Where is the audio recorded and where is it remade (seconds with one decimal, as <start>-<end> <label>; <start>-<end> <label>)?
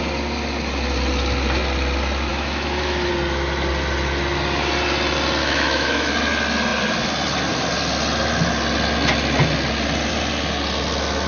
0.0-2.3 recorded; 2.3-3.1 remade; 3.1-5.4 recorded; 5.4-6.1 remade; 6.1-11.3 recorded